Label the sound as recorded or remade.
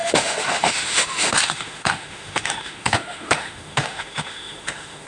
remade